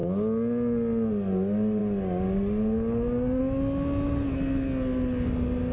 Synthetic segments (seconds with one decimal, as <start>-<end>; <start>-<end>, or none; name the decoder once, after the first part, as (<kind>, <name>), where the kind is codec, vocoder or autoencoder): none